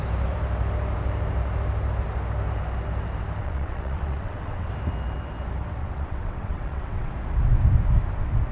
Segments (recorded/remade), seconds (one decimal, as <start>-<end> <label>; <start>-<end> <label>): 0.0-3.4 recorded; 3.4-4.7 remade; 4.7-5.8 recorded; 5.8-7.1 remade; 7.1-8.5 recorded